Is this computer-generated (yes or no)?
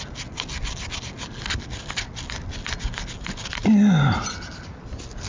no